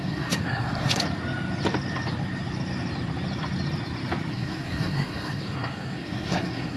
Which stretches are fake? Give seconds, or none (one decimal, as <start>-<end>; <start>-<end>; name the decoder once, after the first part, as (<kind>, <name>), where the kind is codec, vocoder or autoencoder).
0.0-1.0 (codec, SNAC); 4.3-6.8